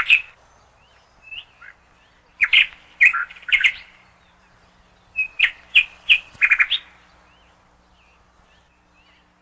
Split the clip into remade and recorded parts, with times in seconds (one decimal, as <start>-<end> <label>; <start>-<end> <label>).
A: 0.0-3.2 recorded; 3.2-4.7 remade; 4.7-9.4 recorded